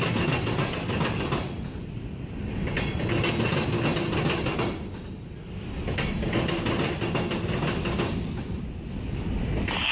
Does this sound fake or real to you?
real